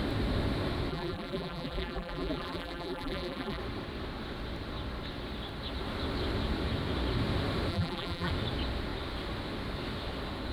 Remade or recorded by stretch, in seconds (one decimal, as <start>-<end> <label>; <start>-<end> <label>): 0.0-0.9 recorded; 0.9-3.6 remade; 3.6-7.7 recorded; 7.7-8.3 remade; 8.3-10.5 recorded